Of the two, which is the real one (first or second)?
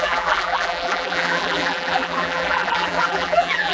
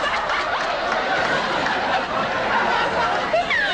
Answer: second